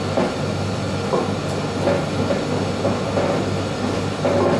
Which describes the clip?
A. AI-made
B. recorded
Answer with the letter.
B